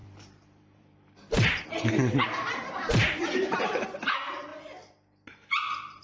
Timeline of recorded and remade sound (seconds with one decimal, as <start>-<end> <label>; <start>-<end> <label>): 0.0-3.6 remade; 3.6-6.0 recorded